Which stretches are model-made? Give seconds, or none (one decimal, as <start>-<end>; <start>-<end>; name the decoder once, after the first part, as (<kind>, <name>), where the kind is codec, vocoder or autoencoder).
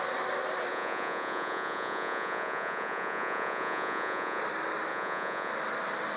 0.7-4.4 (vocoder, Vocos); 4.9-5.5